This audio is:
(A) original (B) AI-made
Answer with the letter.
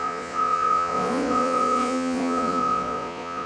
B